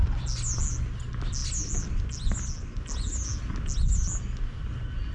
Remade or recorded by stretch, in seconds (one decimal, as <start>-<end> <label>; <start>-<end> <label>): 0.0-5.1 recorded